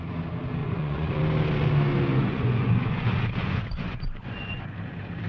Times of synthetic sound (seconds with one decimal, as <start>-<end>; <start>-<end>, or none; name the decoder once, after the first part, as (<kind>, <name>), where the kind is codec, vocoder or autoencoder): 0.6-1.2 (vocoder, Vocos); 2.1-4.6